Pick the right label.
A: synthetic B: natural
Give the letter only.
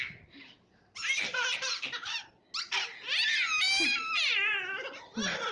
B